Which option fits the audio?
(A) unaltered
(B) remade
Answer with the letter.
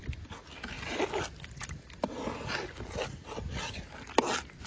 A